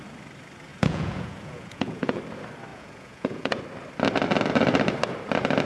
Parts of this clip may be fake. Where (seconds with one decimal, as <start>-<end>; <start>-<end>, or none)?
0.7-2.2; 2.7-3.6